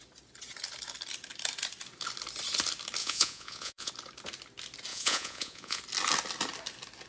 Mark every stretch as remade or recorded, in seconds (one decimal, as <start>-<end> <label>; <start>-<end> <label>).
0.0-3.0 recorded; 3.0-3.9 remade; 3.9-4.9 recorded; 4.9-5.8 remade; 5.8-7.1 recorded